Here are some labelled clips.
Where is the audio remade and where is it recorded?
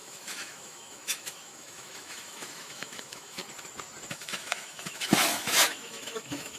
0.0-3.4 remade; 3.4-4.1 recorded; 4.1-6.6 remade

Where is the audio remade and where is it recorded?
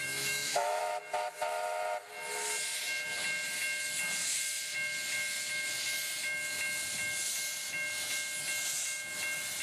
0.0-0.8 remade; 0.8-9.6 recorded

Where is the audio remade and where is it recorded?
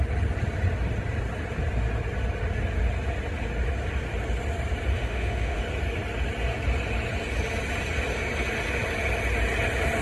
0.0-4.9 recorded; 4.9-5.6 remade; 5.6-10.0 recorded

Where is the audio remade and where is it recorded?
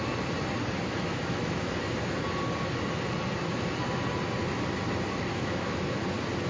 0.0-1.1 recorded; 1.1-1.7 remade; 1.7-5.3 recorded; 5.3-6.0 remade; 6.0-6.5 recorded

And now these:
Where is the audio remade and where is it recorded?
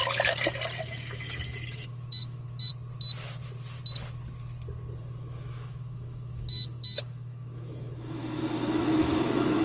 0.0-0.8 recorded; 0.8-2.7 remade; 2.7-5.0 recorded; 5.0-9.6 remade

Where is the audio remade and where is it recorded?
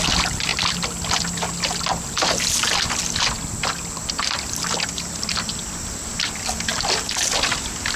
0.0-8.0 recorded